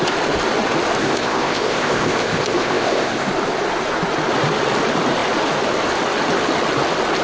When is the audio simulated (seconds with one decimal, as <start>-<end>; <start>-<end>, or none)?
1.0-3.3